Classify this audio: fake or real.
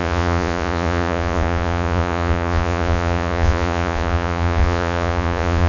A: fake